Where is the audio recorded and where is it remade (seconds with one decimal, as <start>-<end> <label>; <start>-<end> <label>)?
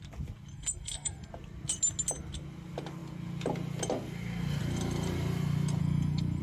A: 0.0-0.5 recorded; 0.5-1.3 remade; 1.3-5.8 recorded; 5.8-6.4 remade